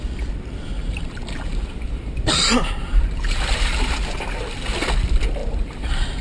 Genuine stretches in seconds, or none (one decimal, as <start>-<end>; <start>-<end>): 0.0-0.8; 3.8-5.4